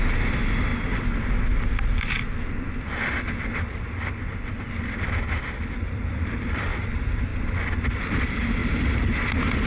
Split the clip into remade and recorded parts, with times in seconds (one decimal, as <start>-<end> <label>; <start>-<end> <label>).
0.0-0.7 remade; 0.7-5.7 recorded; 5.7-7.3 remade; 7.3-7.9 recorded; 7.9-8.6 remade; 8.6-9.7 recorded

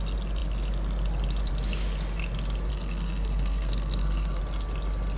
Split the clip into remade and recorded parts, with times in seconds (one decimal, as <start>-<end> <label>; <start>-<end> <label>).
0.0-2.7 recorded; 2.7-4.4 remade; 4.4-5.2 recorded

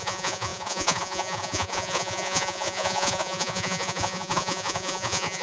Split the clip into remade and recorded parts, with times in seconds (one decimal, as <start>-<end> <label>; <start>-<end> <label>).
0.0-5.4 remade